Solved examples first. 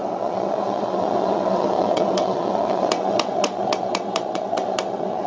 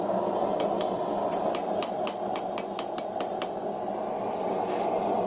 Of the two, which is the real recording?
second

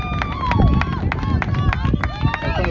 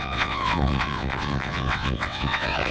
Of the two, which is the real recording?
first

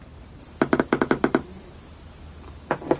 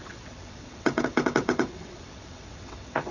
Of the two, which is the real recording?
first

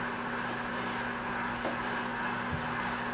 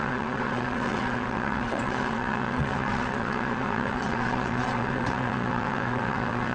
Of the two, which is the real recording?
first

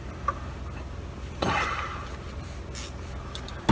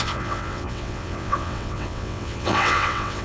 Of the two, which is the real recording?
first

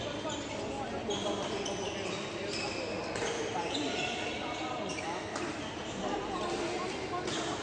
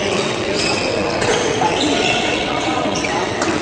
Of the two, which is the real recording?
first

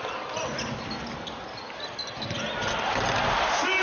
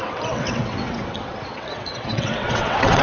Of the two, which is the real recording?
first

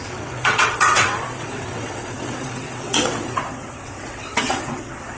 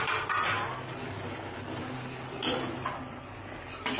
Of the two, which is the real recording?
second